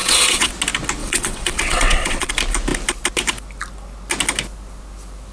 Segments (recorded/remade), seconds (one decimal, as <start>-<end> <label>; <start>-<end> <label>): 0.0-0.5 remade; 0.5-1.0 recorded; 1.0-2.3 remade; 2.3-5.3 recorded